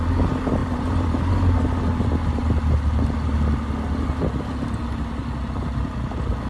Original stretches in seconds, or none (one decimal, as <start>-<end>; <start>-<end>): 0.0-0.6; 1.6-6.5

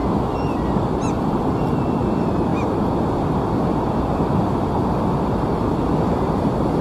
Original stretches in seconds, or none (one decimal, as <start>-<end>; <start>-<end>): 0.0-6.8

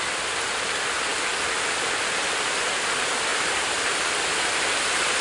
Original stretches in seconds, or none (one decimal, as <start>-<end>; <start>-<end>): 0.0-3.3; 3.9-5.2

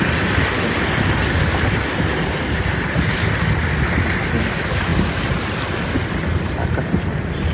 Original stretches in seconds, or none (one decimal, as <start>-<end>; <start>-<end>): 0.0-7.5

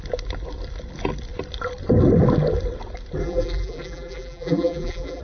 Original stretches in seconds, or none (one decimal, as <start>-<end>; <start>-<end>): 0.0-3.2

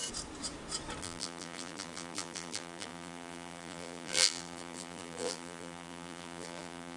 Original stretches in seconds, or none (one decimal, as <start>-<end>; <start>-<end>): 0.0-1.0

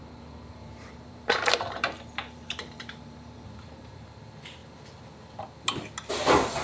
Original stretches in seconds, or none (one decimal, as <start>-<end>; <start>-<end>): 4.0-6.6